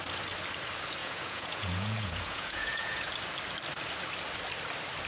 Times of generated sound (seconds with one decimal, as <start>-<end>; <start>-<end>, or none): 1.0-3.1